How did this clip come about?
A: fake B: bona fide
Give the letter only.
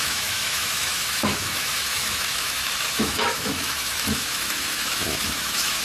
A